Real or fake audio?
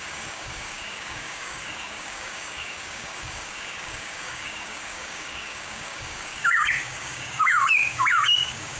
fake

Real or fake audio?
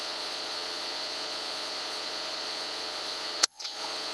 fake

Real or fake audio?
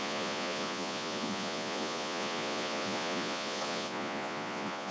fake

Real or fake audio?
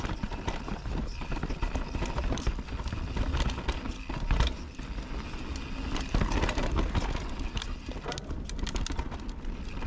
real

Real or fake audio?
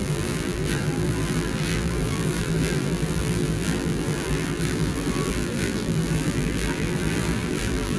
fake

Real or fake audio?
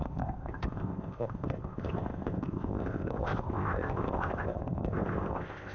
fake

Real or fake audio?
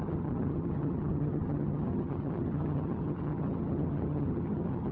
fake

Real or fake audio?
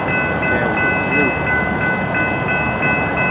real